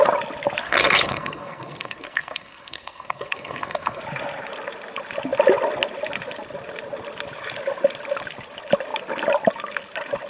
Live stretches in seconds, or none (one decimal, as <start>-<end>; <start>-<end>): 0.0-0.6; 4.0-10.3